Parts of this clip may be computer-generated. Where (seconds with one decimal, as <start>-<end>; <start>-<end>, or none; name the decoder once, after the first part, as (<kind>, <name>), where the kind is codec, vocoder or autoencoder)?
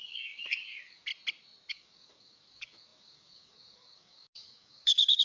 0.0-1.1 (codec, DAC); 1.7-5.2